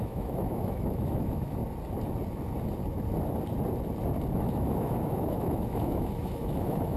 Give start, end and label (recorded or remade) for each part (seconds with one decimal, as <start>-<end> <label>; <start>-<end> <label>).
0.0-1.6 remade; 1.6-4.3 recorded; 4.3-7.0 remade